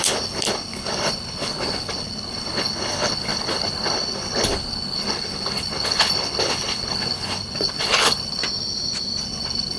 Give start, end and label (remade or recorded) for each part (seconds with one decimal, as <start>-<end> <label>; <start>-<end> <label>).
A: 0.0-8.4 remade; 8.4-9.2 recorded; 9.2-9.8 remade